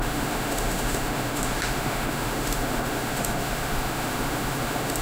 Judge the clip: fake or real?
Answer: fake